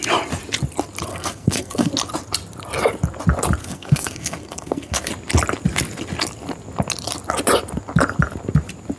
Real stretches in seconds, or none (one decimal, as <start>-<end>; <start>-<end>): 0.0-1.1; 1.9-3.6; 5.1-9.0